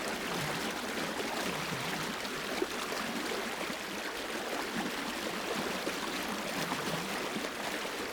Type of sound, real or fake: real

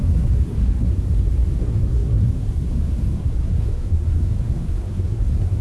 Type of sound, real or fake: fake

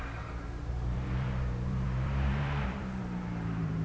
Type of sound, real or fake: fake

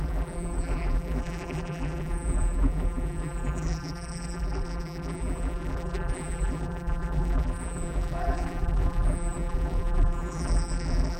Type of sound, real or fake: fake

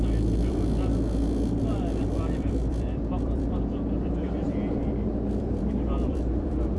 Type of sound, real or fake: fake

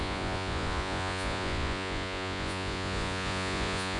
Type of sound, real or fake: fake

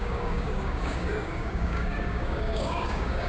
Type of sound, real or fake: fake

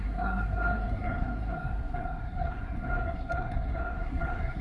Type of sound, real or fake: fake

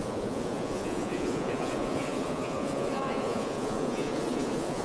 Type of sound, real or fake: fake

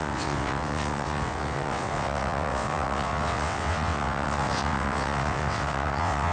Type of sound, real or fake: fake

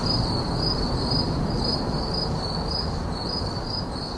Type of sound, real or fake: real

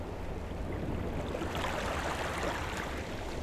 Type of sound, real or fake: real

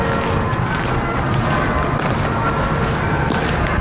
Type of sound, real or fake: real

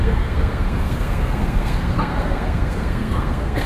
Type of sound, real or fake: fake